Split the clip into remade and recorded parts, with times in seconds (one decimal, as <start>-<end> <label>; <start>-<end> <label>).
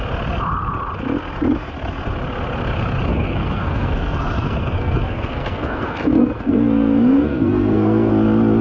0.0-3.1 recorded; 3.1-8.1 remade; 8.1-8.6 recorded